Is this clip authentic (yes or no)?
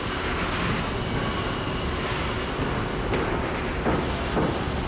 yes